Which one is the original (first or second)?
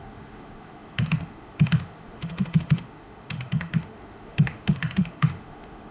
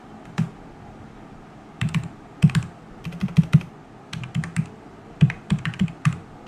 second